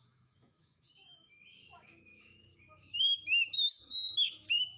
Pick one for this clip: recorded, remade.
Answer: remade